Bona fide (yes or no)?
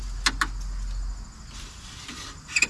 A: yes